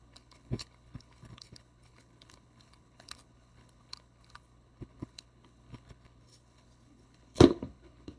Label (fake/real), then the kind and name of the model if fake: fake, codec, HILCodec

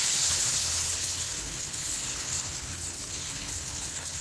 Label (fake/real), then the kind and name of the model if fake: fake, codec, HILCodec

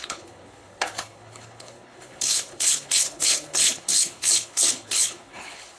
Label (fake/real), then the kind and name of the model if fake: fake, codec, HILCodec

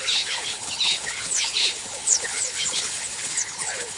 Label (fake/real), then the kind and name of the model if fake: fake, codec, HILCodec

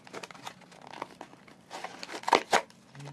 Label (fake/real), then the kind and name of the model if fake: real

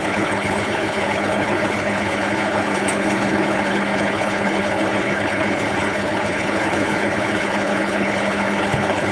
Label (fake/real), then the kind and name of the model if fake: fake, codec, HILCodec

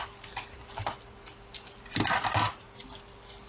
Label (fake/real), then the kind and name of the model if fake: real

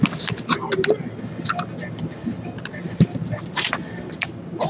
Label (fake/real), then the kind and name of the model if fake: real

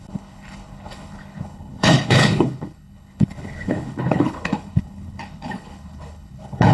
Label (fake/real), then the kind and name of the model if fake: fake, codec, HILCodec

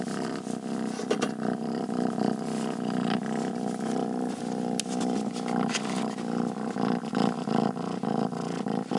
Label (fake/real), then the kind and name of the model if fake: real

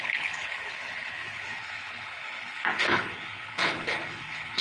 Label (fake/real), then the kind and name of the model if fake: fake, codec, HILCodec